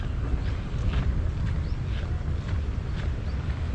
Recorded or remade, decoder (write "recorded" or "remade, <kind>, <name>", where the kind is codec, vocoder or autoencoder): recorded